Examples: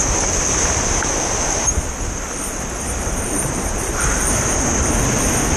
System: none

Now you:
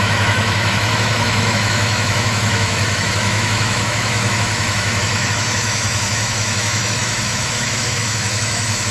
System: autoencoder, DAC-VAE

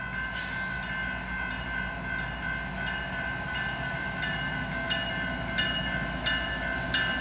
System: none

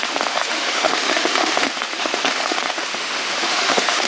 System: autoencoder, DAC-VAE